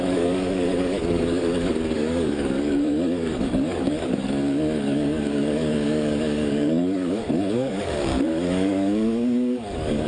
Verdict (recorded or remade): remade